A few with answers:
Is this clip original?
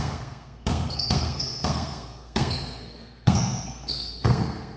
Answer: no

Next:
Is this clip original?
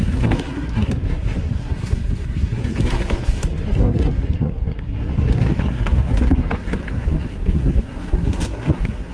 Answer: no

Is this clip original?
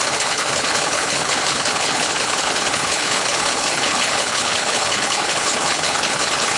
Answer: no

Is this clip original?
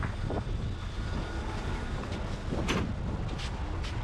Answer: yes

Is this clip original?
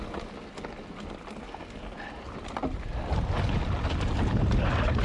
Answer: yes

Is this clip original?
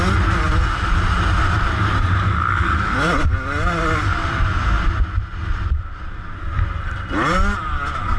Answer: yes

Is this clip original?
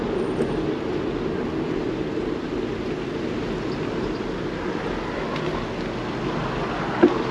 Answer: yes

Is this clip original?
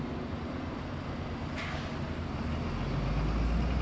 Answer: yes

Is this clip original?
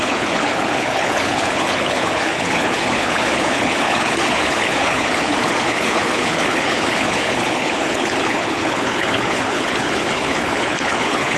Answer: no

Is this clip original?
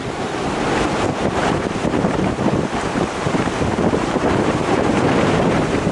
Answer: no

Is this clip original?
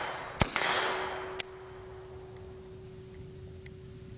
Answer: yes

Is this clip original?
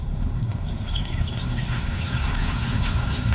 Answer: no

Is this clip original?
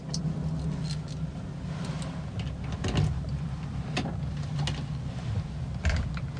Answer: yes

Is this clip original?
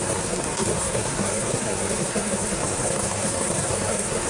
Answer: no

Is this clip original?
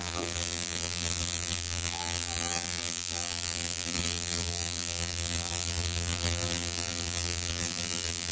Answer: no